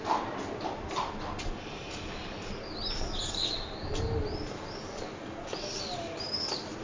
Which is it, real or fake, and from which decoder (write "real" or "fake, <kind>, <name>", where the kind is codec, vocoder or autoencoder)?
real